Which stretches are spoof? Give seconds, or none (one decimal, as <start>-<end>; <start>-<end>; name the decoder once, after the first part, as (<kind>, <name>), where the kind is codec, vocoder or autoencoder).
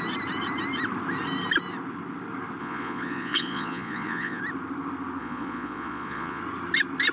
2.6-4.4 (vocoder, Vocos); 5.2-6.4